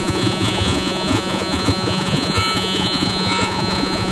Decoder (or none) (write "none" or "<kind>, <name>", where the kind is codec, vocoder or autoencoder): vocoder, Vocos